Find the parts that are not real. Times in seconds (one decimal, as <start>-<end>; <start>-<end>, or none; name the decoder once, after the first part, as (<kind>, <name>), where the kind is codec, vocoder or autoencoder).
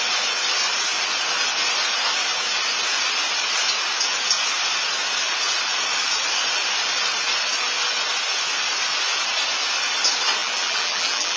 10.4-11.4 (vocoder, BigVGAN v2)